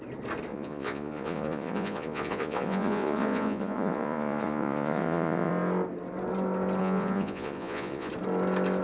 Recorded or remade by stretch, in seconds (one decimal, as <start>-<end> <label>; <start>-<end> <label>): 0.0-0.5 recorded; 0.5-5.5 remade; 5.5-6.8 recorded; 6.8-8.1 remade; 8.1-8.8 recorded